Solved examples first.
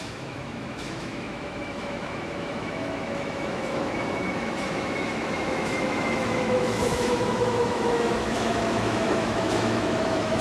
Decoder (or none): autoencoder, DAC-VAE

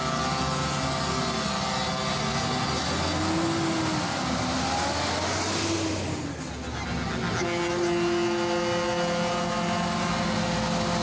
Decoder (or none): none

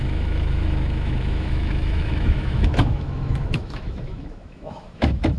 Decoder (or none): autoencoder, DAC-VAE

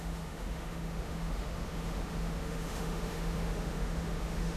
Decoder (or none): autoencoder, DAC-VAE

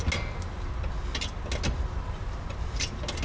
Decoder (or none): none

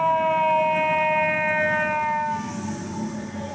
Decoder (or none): none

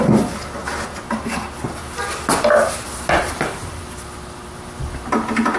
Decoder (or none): none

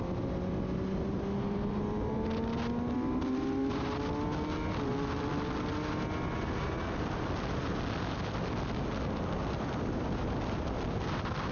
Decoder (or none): none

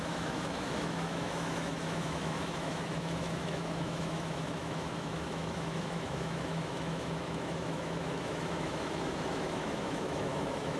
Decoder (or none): autoencoder, DAC-VAE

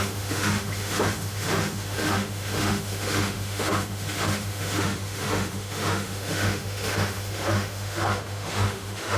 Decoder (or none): autoencoder, DAC-VAE